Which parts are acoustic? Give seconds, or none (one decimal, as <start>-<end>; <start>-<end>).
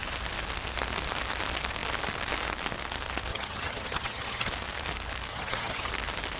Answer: 0.0-3.3; 4.5-5.3; 5.9-6.4